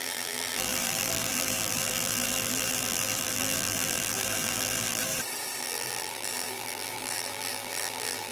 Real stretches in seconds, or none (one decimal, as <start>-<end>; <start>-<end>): 5.1-5.6